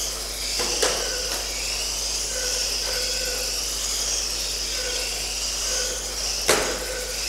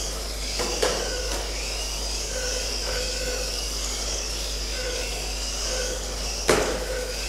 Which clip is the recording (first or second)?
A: first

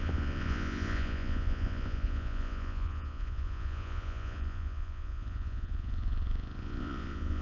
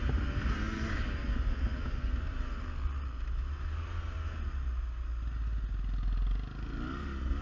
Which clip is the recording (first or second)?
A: second